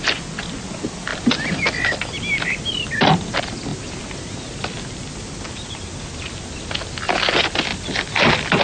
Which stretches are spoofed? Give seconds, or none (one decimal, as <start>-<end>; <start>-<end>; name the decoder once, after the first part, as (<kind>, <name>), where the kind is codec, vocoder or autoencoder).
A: 1.1-1.7 (vocoder, BigVGAN v2)